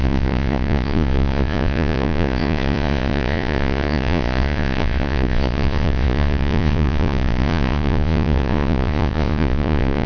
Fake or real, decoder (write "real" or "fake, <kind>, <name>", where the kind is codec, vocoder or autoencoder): fake, vocoder, Vocos